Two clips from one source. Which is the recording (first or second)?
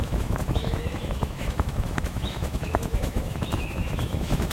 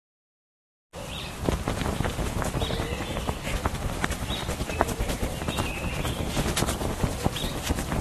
second